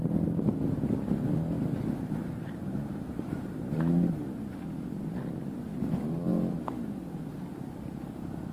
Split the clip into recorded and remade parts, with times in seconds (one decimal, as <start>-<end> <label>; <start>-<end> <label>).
0.0-2.2 recorded; 2.2-4.4 remade; 4.4-8.5 recorded